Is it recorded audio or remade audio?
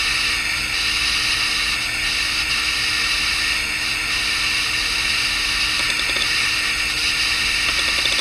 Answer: recorded